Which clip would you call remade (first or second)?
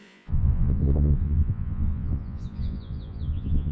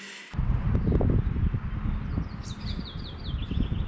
first